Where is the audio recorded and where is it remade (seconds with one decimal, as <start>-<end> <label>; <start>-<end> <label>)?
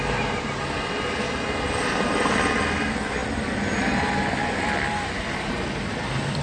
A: 0.0-6.4 recorded